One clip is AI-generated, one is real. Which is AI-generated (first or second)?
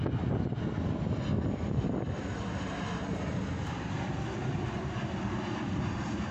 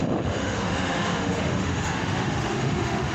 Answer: second